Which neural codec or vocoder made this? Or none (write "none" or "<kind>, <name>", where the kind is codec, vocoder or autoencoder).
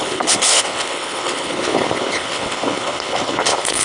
codec, HILCodec